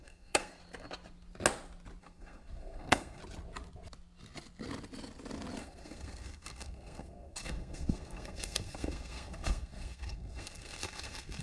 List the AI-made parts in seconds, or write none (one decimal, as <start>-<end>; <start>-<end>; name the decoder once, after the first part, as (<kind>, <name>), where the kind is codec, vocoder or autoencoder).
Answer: 0.0-0.6 (codec, SNAC); 2.0-3.2; 5.6-11.4